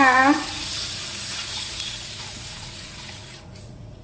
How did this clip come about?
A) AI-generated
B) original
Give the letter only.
A